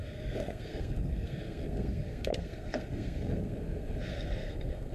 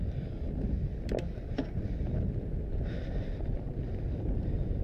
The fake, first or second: first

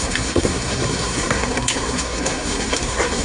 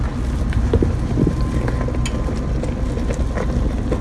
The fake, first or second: first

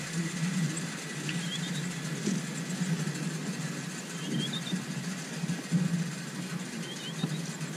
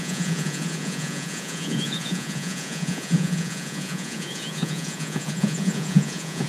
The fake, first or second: second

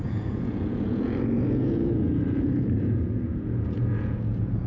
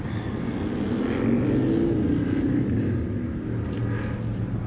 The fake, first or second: first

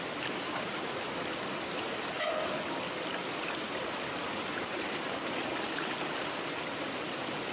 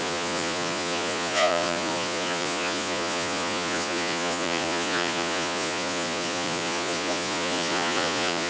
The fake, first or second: second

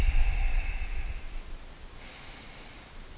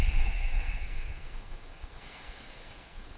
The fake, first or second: second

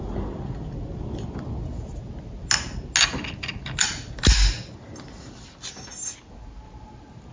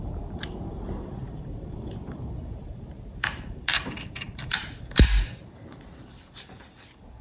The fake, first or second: second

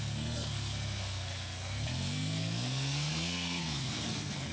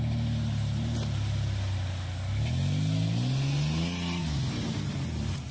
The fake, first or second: first